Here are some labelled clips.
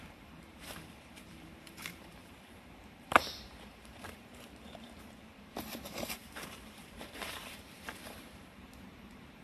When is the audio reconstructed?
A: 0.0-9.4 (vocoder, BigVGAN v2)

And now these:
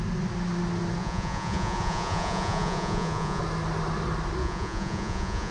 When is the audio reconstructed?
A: 1.0-3.4 (vocoder, Vocos); 4.4-5.5

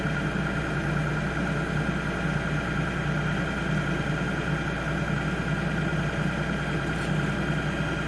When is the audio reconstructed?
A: none

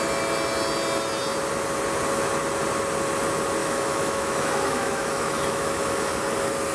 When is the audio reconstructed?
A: 3.6-6.2 (autoencoder, DAC-VAE)